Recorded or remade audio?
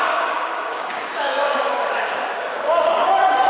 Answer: remade